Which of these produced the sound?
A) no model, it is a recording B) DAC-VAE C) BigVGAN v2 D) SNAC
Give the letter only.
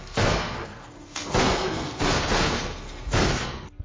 D